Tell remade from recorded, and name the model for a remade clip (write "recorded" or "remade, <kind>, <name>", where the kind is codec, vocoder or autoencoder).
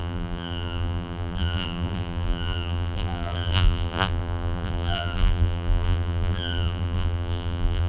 remade, vocoder, BigVGAN v2